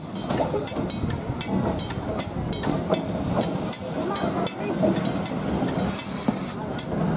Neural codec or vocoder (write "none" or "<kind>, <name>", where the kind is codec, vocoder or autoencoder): none